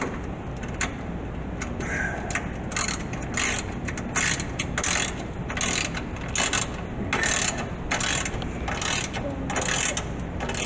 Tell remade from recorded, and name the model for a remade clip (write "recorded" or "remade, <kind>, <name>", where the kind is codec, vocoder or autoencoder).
recorded